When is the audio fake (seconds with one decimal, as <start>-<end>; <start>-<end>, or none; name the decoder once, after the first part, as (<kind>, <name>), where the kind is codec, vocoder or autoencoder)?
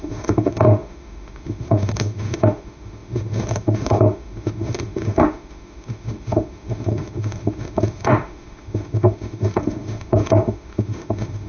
0.0-11.5 (autoencoder, DAC-VAE)